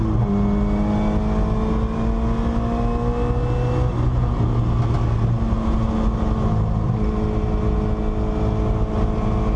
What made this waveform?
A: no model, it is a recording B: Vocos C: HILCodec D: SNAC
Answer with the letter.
A